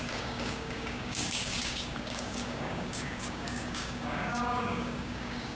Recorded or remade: remade